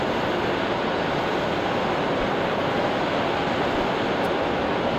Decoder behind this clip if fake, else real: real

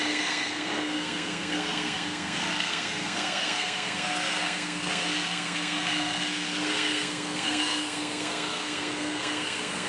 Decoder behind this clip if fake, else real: fake, codec, SNAC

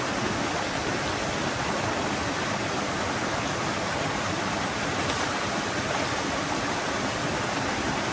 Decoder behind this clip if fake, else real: real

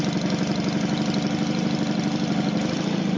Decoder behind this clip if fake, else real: real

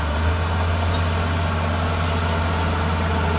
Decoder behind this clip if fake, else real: real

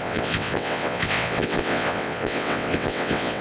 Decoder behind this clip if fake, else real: fake, vocoder, WaveNeXt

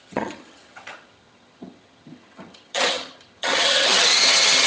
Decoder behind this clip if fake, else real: fake, vocoder, HiFi-GAN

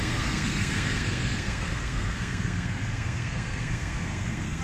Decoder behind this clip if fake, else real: fake, codec, SNAC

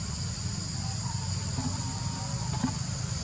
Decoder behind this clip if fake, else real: real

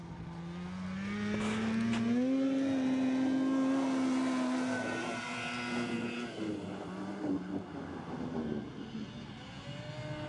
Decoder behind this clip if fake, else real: real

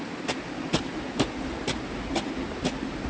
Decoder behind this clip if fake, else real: real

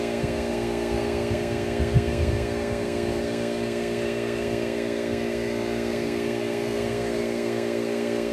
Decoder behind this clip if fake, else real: fake, codec, SNAC